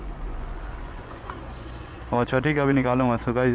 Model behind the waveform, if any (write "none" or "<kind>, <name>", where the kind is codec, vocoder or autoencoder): vocoder, Vocos